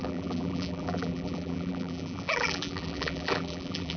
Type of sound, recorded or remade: remade